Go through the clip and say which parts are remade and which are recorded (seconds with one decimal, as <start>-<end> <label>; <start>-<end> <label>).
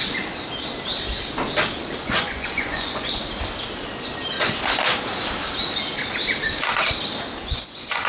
0.0-2.0 recorded; 2.0-3.2 remade; 3.2-7.4 recorded; 7.4-8.1 remade